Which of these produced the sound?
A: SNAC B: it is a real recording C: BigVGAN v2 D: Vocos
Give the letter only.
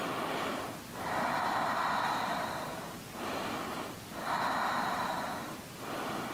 B